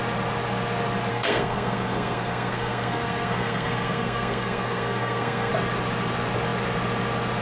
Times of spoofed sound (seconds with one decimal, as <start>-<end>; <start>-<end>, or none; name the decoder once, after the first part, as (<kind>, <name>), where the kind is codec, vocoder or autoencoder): 1.1-5.5 (codec, SNAC)